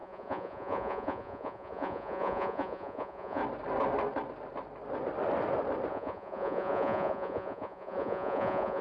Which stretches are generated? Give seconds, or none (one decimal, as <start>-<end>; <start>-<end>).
0.0-3.4; 5.9-8.8